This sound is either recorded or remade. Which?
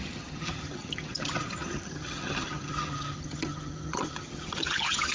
remade